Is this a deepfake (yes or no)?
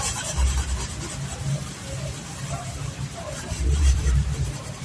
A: yes